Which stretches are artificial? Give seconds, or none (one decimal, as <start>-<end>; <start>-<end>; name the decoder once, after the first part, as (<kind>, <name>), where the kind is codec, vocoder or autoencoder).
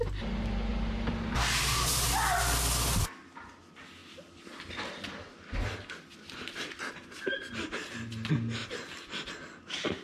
0.7-2.1 (vocoder, BigVGAN v2)